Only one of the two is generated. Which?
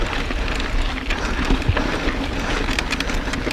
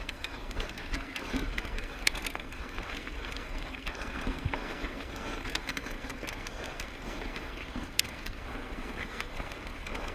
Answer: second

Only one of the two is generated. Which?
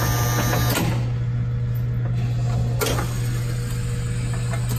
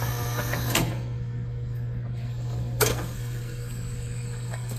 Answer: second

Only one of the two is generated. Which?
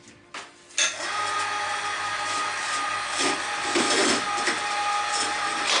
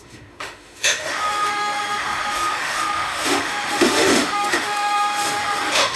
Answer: second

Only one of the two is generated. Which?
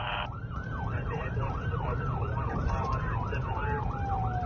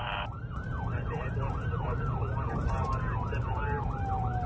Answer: first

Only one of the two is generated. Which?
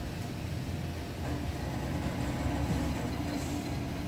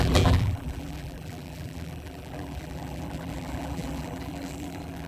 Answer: second